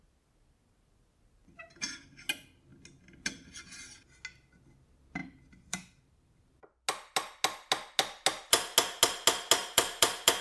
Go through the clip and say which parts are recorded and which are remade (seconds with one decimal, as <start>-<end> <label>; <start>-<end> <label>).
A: 0.0-5.2 recorded; 5.2-6.6 remade; 6.6-9.6 recorded; 9.6-10.4 remade

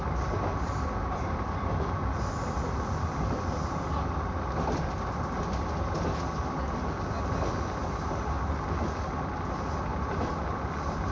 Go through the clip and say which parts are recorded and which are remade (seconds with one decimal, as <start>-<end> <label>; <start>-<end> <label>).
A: 0.0-9.9 recorded; 9.9-10.7 remade; 10.7-11.1 recorded

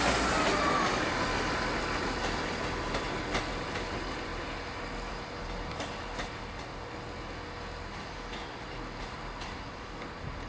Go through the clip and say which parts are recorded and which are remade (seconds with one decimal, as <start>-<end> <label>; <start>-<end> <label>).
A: 0.0-10.5 recorded

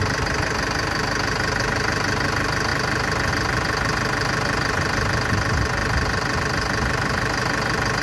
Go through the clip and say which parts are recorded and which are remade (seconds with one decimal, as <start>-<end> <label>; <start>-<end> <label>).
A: 0.0-8.0 recorded